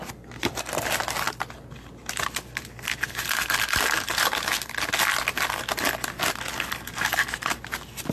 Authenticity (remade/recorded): recorded